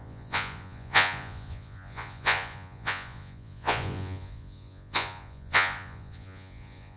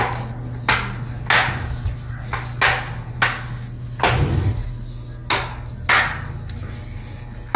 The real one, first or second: second